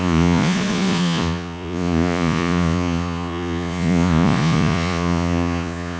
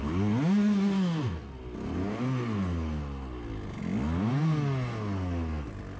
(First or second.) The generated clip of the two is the first